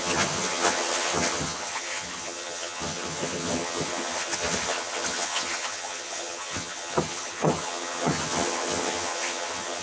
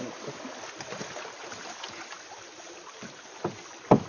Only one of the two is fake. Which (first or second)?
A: first